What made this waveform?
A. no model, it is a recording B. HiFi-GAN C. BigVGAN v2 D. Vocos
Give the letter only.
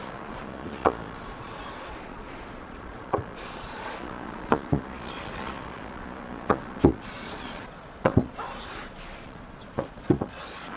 D